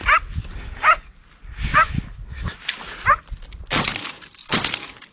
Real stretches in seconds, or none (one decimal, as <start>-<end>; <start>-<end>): 0.0-5.1